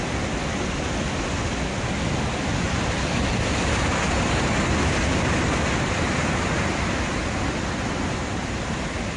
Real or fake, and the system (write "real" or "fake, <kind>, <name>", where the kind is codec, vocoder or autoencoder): real